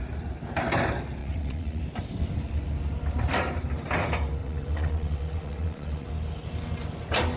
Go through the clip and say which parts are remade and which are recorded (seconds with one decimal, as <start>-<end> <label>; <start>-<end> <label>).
0.0-1.2 recorded; 1.2-1.8 remade; 1.8-4.4 recorded; 4.4-6.1 remade; 6.1-7.4 recorded